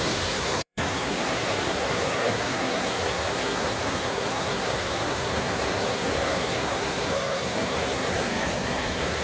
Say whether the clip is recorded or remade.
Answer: remade